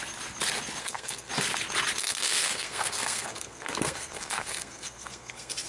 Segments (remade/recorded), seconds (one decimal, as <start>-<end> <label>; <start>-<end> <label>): 0.0-0.8 recorded; 0.8-1.3 remade; 1.3-2.0 recorded; 2.0-5.7 remade

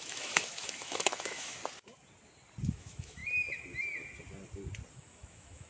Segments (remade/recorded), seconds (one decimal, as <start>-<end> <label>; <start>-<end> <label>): 0.0-1.6 remade; 1.6-2.7 recorded; 2.7-3.2 remade; 3.2-4.9 recorded; 4.9-5.7 remade

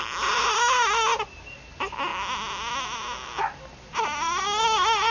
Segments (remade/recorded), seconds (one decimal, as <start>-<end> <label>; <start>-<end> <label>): 0.0-5.1 recorded